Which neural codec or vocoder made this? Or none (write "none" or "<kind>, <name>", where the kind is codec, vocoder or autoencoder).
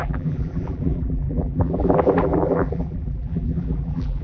vocoder, BigVGAN v2